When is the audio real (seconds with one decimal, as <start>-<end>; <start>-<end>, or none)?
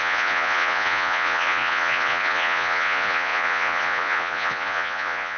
none